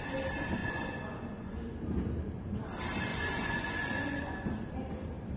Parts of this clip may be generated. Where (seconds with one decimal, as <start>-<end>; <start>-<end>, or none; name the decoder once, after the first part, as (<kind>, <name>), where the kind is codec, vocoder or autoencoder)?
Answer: 0.6-1.6 (vocoder, Vocos); 3.1-4.5